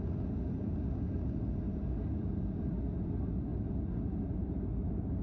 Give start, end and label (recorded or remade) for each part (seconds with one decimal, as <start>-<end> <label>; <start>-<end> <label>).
0.0-5.2 recorded

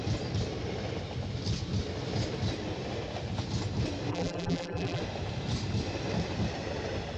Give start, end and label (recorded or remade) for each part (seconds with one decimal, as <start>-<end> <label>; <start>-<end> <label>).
0.0-4.1 recorded; 4.1-5.0 remade; 5.0-7.2 recorded